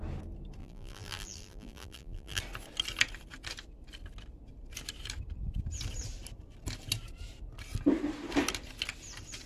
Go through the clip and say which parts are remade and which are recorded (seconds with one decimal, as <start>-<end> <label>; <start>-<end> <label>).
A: 0.0-0.6 recorded; 0.6-2.4 remade; 2.4-9.5 recorded